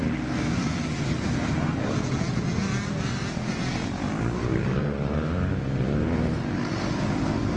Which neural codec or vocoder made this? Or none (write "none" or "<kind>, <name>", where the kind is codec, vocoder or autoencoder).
none